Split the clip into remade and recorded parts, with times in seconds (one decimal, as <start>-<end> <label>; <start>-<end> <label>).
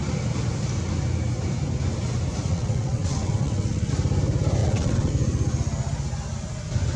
0.0-2.5 recorded; 2.5-3.9 remade; 3.9-4.6 recorded; 4.6-5.1 remade; 5.1-7.0 recorded